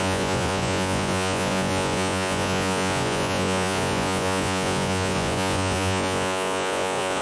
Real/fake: fake